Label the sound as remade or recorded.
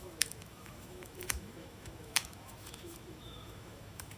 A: remade